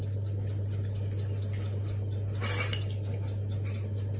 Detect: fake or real real